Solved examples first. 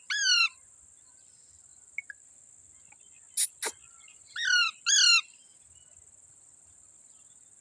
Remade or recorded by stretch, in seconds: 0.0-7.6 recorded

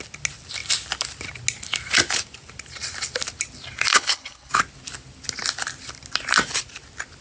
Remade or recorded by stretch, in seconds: 0.0-3.9 recorded; 3.9-4.5 remade; 4.5-7.2 recorded

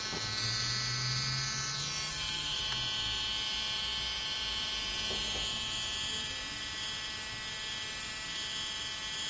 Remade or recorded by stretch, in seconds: 0.0-2.1 recorded; 2.1-2.6 remade; 2.6-9.3 recorded

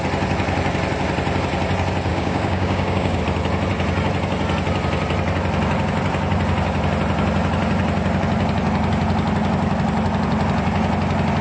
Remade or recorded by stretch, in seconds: 0.0-2.1 recorded; 2.1-3.2 remade; 3.2-11.4 recorded

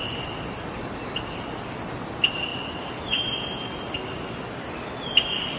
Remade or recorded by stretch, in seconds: 0.0-5.6 recorded